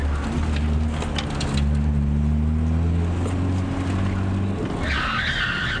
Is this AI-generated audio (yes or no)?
no